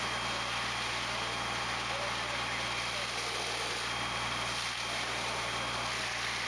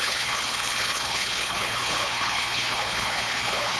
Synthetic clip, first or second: second